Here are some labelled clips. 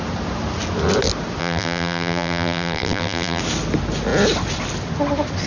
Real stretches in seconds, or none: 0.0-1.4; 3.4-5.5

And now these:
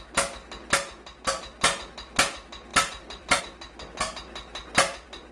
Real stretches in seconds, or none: 0.0-2.7; 3.4-5.3

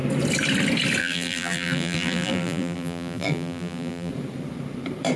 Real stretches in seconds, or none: 0.0-1.0; 4.1-5.2

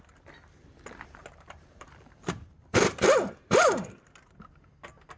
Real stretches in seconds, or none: 0.0-1.2; 4.3-5.2